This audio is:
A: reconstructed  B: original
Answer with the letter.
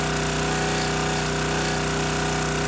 B